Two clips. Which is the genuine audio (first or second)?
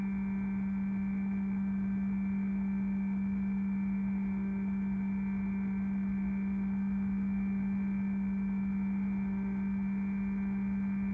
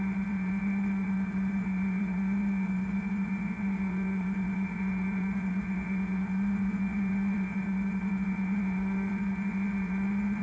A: first